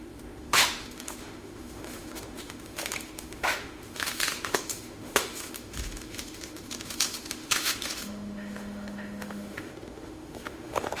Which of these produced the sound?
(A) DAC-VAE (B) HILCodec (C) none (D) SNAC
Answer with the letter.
A